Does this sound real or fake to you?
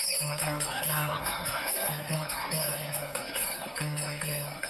fake